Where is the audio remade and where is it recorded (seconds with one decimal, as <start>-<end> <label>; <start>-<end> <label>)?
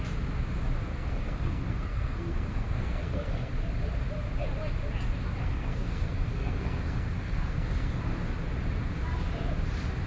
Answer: 0.0-0.9 recorded; 0.9-3.5 remade; 3.5-5.4 recorded; 5.4-8.0 remade; 8.0-10.1 recorded